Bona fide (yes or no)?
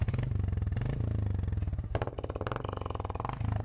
yes